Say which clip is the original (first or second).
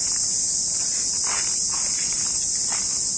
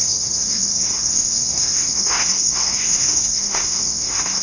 first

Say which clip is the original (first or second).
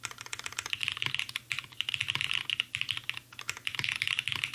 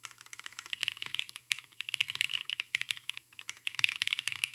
first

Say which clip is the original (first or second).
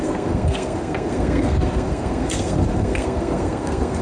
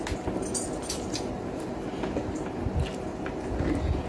second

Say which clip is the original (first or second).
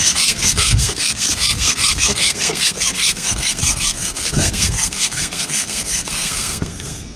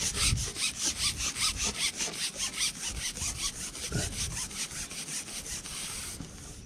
second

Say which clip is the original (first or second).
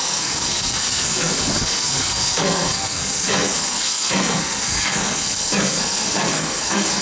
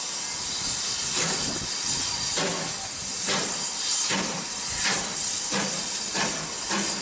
second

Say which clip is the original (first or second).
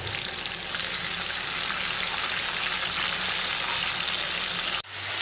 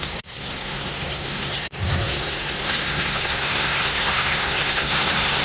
first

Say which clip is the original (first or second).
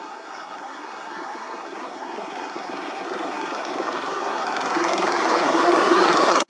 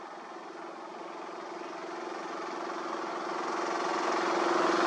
second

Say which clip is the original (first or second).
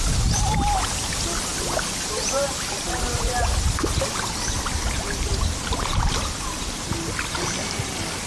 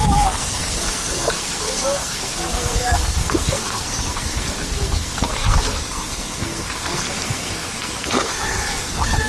first